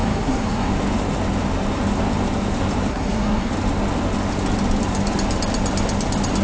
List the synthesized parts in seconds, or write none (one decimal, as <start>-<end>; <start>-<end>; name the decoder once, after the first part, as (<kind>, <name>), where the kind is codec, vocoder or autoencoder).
0.0-0.7 (codec, SNAC); 2.9-3.5